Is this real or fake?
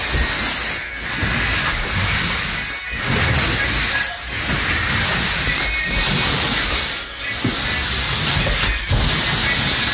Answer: real